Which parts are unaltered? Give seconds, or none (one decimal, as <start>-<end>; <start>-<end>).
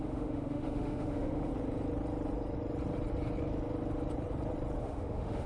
1.5-4.8